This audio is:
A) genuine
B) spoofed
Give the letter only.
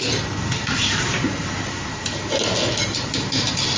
A